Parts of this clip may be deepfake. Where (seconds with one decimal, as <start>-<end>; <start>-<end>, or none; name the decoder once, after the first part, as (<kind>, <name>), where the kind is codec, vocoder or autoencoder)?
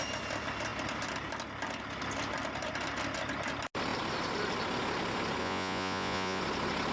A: 5.4-6.4 (vocoder, Vocos)